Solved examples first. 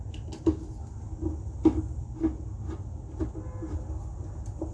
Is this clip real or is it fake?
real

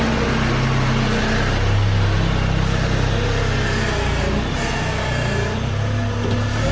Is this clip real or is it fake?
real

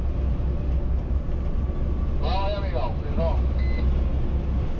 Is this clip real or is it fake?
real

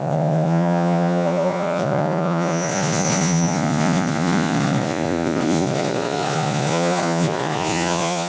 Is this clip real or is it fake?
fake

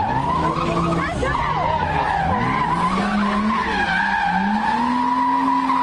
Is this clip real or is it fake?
real